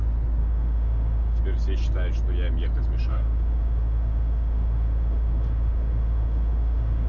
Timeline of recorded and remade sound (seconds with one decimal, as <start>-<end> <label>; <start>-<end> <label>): 0.0-0.4 recorded; 0.4-1.4 remade; 1.4-3.1 recorded; 3.1-7.1 remade